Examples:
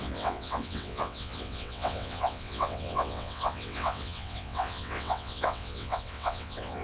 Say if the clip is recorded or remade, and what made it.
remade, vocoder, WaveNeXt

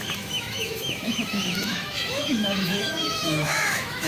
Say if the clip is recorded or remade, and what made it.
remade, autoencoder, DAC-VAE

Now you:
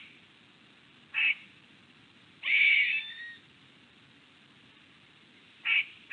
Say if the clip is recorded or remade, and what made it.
recorded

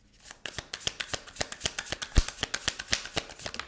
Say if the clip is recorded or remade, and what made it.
recorded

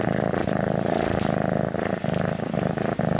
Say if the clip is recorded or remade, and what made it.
recorded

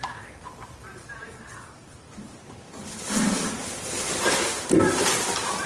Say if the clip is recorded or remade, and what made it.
recorded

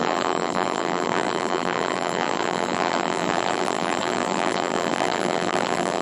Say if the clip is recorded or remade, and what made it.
remade, vocoder, BigVGAN v2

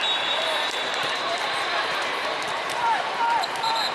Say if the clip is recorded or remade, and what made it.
remade, vocoder, BigVGAN v2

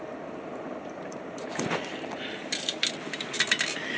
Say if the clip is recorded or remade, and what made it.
remade, vocoder, BigVGAN v2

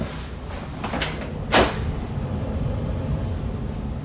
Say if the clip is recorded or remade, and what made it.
recorded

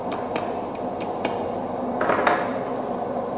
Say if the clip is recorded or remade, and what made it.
recorded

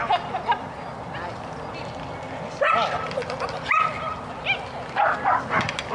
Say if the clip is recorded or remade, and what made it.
recorded